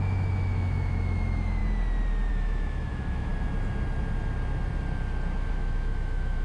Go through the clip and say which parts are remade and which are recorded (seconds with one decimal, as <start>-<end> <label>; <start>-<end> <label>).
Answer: 0.0-1.6 remade; 1.6-2.3 recorded; 2.3-3.3 remade; 3.3-5.5 recorded; 5.5-6.4 remade